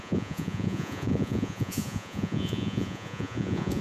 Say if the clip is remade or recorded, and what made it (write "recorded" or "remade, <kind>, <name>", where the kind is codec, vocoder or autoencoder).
remade, vocoder, Vocos